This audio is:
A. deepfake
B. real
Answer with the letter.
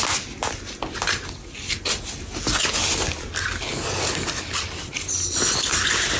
B